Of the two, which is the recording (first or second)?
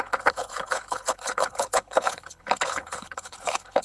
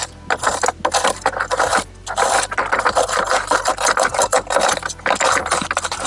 second